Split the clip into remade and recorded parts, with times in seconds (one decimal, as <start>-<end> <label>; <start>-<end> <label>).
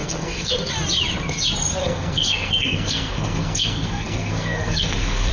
0.0-0.5 remade; 0.5-1.8 recorded; 1.8-5.3 remade